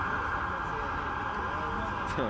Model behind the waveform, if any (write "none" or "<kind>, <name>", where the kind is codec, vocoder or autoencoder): none